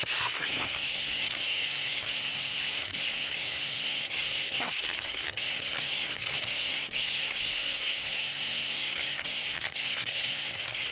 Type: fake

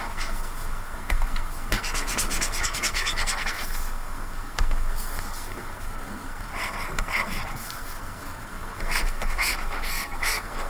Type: fake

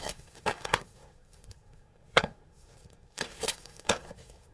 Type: fake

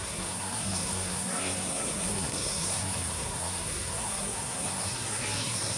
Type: fake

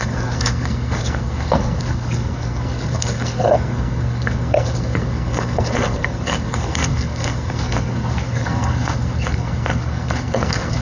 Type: fake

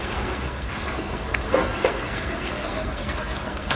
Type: fake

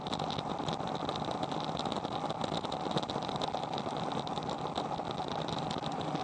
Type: real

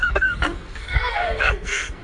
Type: fake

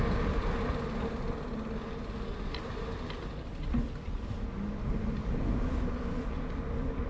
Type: real